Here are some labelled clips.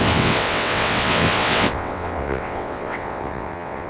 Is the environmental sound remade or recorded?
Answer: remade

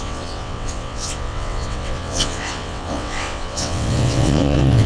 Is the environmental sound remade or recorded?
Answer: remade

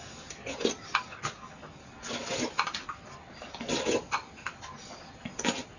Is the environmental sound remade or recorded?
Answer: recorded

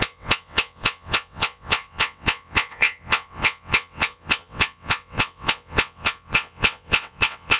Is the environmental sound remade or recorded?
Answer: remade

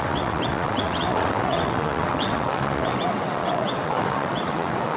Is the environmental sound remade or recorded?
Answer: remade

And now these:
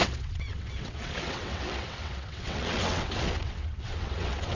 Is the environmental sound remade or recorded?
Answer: remade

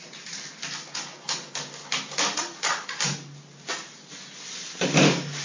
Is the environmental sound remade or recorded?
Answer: recorded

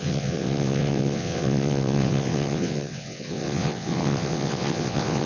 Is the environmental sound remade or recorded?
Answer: remade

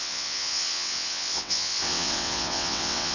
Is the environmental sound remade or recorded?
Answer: remade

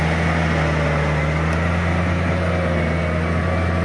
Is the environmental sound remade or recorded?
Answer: recorded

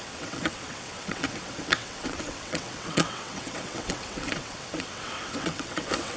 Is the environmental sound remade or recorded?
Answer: remade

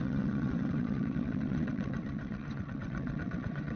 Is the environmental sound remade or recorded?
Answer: remade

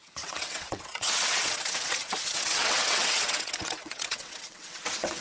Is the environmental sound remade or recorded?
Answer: remade